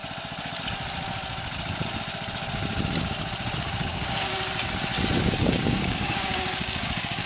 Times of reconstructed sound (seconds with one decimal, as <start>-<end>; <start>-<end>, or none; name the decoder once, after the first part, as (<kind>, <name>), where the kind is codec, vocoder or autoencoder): 3.6-4.3 (codec, DAC); 5.2-7.3